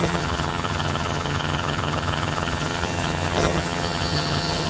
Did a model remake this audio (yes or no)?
yes